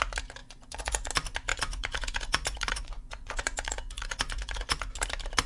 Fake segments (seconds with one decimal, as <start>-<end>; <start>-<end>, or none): 0.4-1.1; 1.5-4.8